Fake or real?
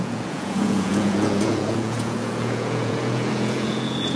fake